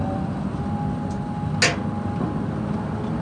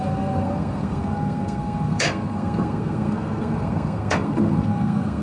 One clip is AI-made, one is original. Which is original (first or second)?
first